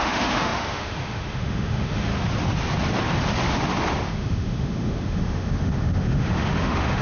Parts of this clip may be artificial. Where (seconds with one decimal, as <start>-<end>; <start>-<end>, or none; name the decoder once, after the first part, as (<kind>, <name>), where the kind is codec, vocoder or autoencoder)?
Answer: 0.0-2.1 (autoencoder, DAC-VAE); 4.1-7.0